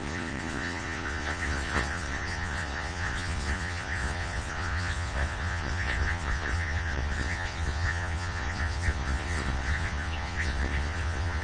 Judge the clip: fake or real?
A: fake